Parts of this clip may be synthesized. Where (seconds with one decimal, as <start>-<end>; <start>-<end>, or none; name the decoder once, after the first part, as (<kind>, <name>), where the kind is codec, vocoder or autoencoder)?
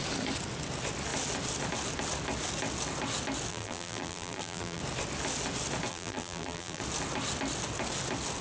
3.5-4.8 (vocoder, BigVGAN v2); 5.9-6.8